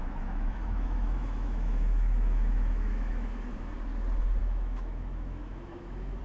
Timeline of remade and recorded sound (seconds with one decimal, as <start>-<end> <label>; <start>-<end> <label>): 0.0-3.7 remade; 3.7-4.4 recorded; 4.4-6.2 remade